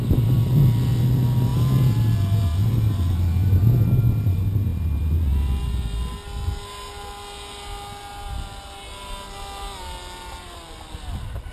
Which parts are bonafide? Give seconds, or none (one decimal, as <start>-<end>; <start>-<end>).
0.0-11.5